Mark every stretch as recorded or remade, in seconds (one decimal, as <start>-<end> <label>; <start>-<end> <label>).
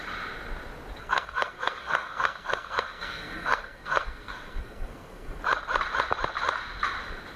0.0-1.0 recorded; 1.0-5.4 remade; 5.4-7.4 recorded